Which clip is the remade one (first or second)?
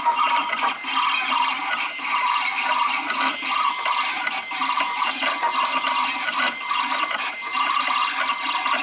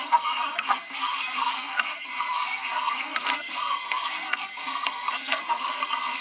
second